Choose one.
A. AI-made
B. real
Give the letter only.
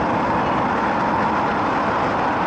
B